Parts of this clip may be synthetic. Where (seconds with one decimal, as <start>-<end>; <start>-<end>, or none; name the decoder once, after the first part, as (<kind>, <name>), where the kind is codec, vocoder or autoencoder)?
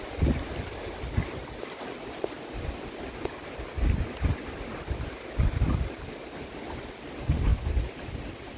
none